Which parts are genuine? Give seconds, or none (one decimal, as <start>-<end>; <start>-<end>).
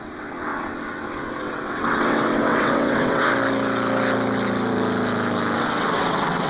3.3-5.6